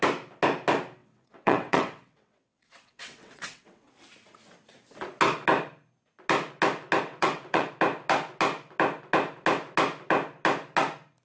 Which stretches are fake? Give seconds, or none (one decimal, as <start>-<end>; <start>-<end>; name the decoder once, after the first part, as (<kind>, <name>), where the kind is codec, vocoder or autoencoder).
1.0-3.9 (vocoder, WaveNeXt); 7.1-7.7